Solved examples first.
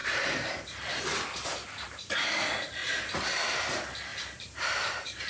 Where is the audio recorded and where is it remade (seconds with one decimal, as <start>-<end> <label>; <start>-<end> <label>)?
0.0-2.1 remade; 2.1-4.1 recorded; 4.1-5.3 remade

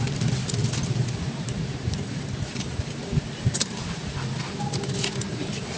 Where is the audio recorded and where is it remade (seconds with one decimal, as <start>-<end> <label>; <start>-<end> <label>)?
0.0-4.0 remade; 4.0-5.3 recorded; 5.3-5.8 remade

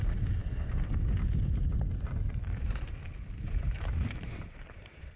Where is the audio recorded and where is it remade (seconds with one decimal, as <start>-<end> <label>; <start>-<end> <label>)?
0.0-0.4 remade; 0.4-1.4 recorded; 1.4-5.2 remade